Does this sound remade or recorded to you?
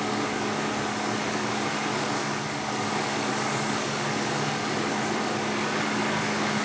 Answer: remade